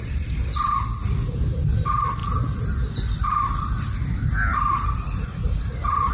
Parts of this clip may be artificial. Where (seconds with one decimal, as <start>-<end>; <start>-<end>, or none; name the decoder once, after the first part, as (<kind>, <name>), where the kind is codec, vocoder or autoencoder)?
0.0-0.9 (vocoder, BigVGAN v2); 1.7-6.1